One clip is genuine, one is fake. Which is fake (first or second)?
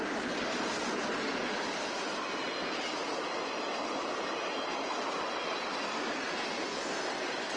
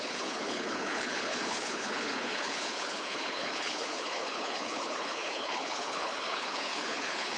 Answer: second